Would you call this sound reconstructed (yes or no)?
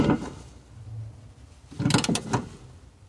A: no